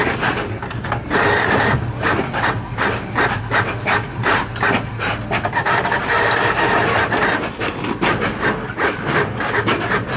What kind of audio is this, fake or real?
real